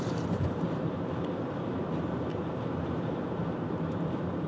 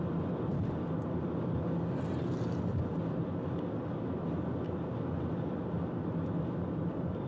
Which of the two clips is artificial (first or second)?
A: first